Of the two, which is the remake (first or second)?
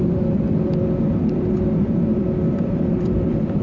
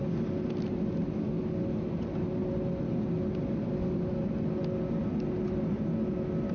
first